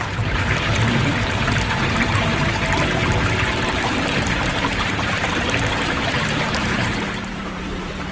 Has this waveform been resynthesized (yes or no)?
yes